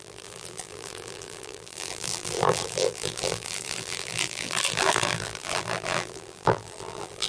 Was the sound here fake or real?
fake